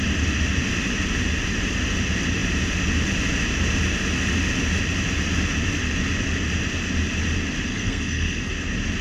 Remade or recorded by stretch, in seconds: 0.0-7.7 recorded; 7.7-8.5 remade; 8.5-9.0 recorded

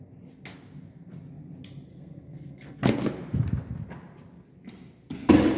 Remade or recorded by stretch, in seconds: 0.0-1.9 recorded; 1.9-2.8 remade; 2.8-5.6 recorded

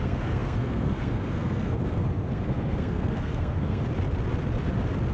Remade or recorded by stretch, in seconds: 0.0-3.8 remade; 3.8-5.1 recorded

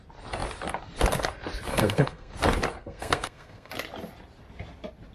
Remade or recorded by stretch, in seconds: 0.0-1.7 recorded; 1.7-2.3 remade; 2.3-2.8 recorded; 2.8-3.7 remade; 3.7-5.1 recorded

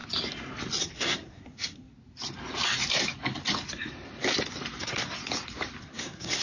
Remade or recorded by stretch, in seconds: 0.0-0.8 recorded; 0.8-1.9 remade; 1.9-4.8 recorded; 4.8-5.2 remade; 5.2-5.8 recorded; 5.8-6.4 remade

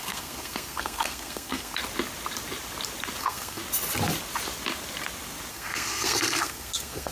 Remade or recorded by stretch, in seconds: 0.0-1.8 remade; 1.8-3.2 recorded; 3.2-3.6 remade; 3.6-5.5 recorded; 5.5-7.1 remade